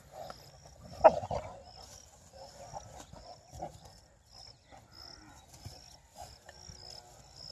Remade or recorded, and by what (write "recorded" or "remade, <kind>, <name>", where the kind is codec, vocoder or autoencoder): recorded